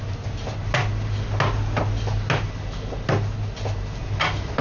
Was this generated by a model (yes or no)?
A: no